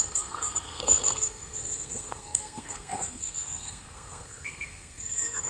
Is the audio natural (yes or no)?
no